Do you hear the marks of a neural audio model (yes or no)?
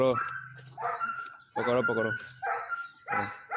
no